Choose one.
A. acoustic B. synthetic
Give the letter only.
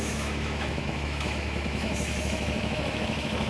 B